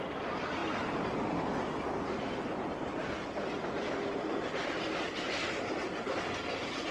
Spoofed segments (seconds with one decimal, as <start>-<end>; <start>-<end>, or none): none